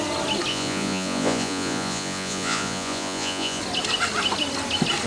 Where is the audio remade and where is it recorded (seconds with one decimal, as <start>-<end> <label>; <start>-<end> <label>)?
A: 0.0-0.5 recorded; 0.5-3.6 remade; 3.6-5.1 recorded

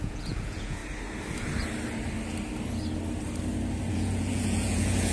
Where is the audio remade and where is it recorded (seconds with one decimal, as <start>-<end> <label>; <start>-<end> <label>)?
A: 0.0-0.8 remade; 0.8-3.9 recorded; 3.9-5.1 remade

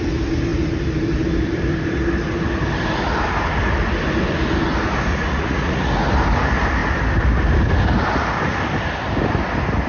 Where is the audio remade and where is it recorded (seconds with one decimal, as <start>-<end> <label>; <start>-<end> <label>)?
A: 0.0-5.1 recorded; 5.1-5.9 remade; 5.9-9.9 recorded

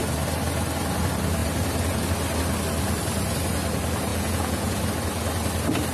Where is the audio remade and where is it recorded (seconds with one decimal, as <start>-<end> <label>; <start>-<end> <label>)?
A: 0.0-4.1 recorded; 4.1-4.8 remade; 4.8-5.9 recorded